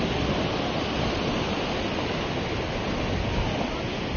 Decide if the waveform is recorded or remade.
recorded